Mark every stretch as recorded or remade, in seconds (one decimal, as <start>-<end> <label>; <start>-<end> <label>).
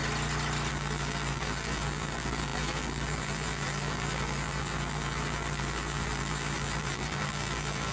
0.0-0.7 recorded; 0.7-7.9 remade